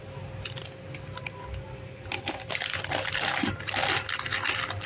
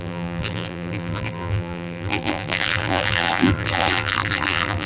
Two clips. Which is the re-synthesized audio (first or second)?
second